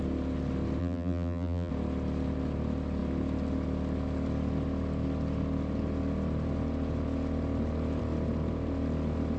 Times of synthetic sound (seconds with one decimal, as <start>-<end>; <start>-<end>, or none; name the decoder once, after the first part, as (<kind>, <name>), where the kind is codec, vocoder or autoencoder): 0.8-1.7 (vocoder, BigVGAN v2)